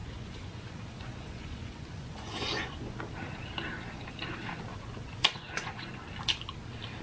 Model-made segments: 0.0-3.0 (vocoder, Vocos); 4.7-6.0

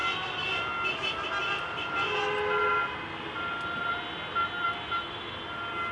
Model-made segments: none

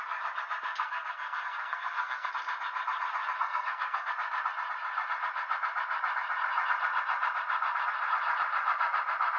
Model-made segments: 0.7-2.3 (codec, SNAC); 3.4-4.1